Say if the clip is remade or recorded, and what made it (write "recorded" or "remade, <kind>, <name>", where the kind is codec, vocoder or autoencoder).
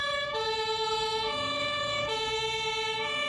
remade, autoencoder, DAC-VAE